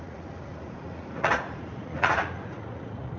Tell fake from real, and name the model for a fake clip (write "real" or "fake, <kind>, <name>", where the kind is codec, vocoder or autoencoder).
fake, vocoder, Vocos